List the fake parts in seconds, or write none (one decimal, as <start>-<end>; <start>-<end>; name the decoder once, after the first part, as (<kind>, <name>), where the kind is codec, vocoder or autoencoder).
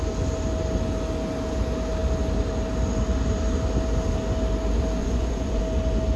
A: 5.0-5.6 (vocoder, Vocos)